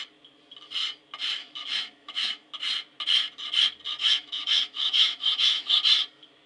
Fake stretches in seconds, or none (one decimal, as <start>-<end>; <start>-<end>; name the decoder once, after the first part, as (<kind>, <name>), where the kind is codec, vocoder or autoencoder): 1.4-2.5 (autoencoder, DAC-VAE); 4.0-5.7